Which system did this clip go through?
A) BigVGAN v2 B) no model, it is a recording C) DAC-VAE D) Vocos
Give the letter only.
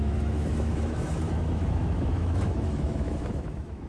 C